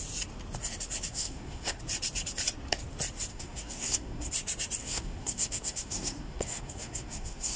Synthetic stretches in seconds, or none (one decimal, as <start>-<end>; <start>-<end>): 1.1-1.8; 3.3-4.3; 4.8-7.6